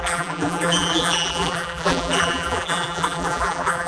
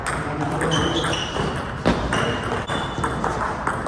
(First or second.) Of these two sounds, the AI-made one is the first